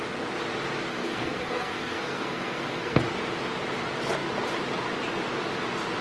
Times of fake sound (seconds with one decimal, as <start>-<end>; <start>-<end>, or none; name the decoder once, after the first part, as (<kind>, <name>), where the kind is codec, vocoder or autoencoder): 0.9-3.0 (codec, SNAC)